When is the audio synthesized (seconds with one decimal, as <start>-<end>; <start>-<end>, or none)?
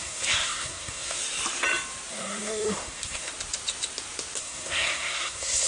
0.0-1.2; 2.1-3.3; 4.4-5.7